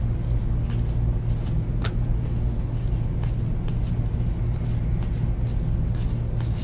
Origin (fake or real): real